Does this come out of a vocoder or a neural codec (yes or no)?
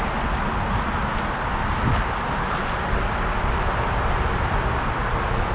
no